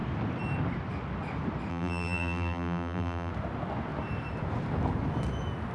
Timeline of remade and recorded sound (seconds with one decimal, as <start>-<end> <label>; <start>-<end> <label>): 0.0-1.7 recorded; 1.7-3.3 remade; 3.3-5.7 recorded